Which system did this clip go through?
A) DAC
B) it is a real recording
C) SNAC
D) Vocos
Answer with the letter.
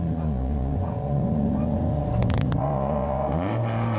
D